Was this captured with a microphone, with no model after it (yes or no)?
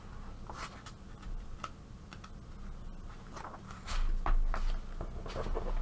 yes